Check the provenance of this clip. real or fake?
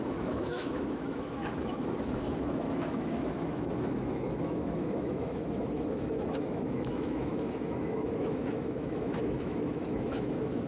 fake